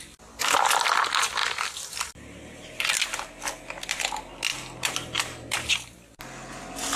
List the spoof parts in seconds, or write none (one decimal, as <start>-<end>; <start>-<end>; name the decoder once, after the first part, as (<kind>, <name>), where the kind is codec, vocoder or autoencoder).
1.4-2.8 (vocoder, BigVGAN v2); 4.5-5.7